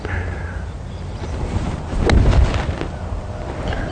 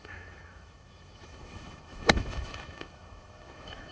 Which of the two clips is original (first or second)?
first